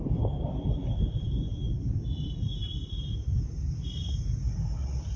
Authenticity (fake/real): real